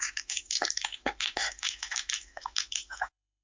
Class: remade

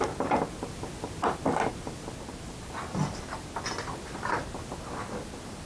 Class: recorded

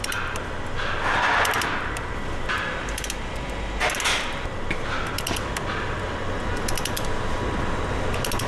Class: recorded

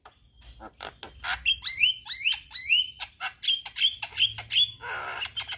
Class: recorded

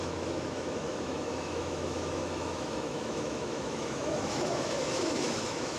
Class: remade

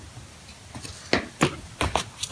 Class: recorded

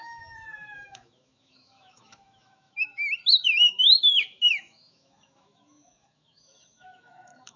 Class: remade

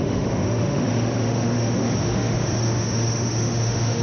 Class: remade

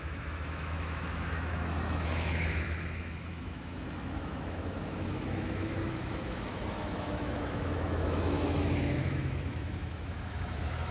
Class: remade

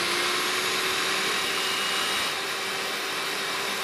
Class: recorded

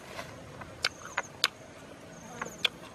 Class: recorded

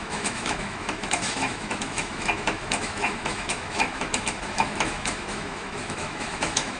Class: remade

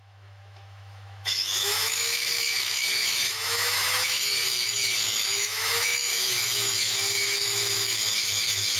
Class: remade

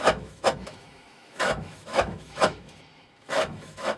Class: remade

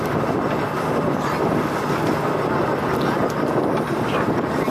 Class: recorded